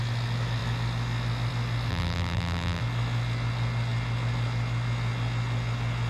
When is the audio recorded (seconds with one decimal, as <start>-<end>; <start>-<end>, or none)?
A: 0.0-1.9; 2.8-6.1